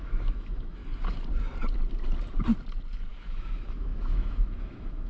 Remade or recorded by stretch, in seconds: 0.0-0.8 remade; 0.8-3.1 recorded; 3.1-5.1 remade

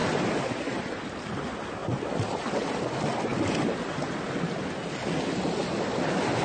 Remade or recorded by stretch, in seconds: 0.0-6.4 recorded

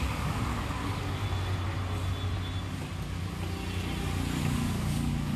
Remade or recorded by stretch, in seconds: 0.0-1.2 remade; 1.2-4.4 recorded; 4.4-5.4 remade

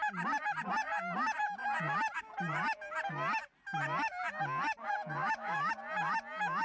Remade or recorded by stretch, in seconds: 0.0-5.2 recorded; 5.2-5.7 remade; 5.7-6.6 recorded